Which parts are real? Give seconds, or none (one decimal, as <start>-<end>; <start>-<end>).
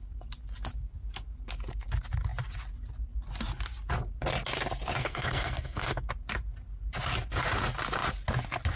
0.0-5.0; 6.1-8.8